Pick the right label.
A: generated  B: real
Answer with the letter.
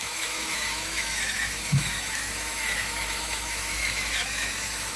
A